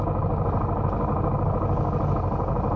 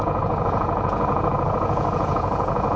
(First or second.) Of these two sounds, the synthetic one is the second